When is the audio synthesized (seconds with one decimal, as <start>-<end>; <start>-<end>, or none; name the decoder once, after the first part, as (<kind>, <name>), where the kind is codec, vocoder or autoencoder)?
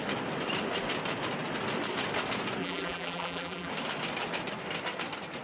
2.6-3.7 (vocoder, BigVGAN v2)